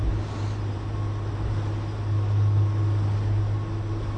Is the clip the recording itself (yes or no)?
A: yes